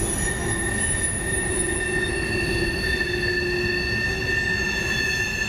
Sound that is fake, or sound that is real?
real